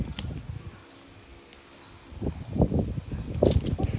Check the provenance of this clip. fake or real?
real